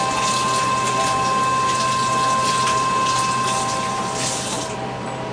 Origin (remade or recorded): recorded